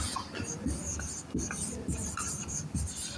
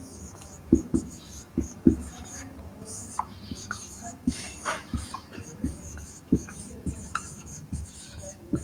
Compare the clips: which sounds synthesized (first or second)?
second